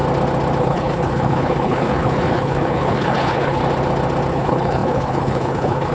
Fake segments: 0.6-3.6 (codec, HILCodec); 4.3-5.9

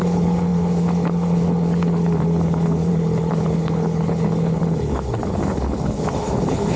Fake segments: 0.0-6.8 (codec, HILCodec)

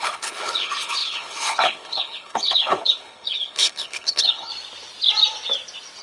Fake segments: 0.0-4.5 (codec, HILCodec)